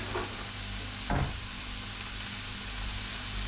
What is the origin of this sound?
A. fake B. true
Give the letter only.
B